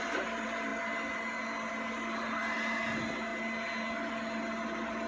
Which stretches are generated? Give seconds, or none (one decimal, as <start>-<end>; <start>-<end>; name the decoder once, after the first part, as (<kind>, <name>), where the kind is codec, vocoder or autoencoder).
0.0-0.7 (vocoder, BigVGAN v2); 1.7-3.3; 4.1-5.1

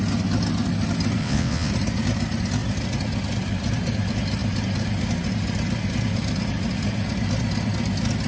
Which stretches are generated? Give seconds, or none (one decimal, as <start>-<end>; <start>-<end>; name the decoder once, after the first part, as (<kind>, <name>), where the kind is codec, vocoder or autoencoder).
1.2-1.7 (vocoder, WaveNeXt)

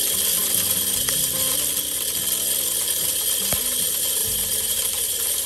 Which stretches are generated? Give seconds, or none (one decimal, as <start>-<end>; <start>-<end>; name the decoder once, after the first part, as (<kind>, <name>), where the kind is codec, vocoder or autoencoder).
4.2-5.1 (vocoder, BigVGAN v2)

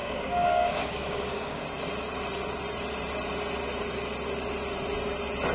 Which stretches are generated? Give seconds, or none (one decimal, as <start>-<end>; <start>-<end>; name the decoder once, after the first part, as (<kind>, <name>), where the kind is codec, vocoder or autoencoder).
0.0-1.6 (codec, DAC)

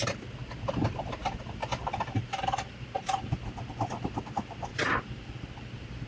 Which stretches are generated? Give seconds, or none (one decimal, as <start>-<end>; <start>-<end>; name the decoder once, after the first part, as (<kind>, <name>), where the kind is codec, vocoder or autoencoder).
none

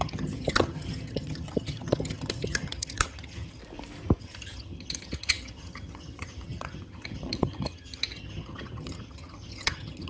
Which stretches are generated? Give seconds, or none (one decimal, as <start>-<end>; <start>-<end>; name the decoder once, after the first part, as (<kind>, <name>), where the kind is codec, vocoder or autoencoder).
0.0-3.6 (vocoder, HiFi-GAN); 4.2-10.1